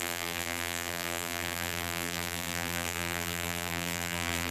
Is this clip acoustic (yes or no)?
no